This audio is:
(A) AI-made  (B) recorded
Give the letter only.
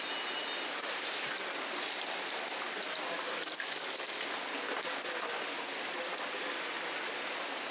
B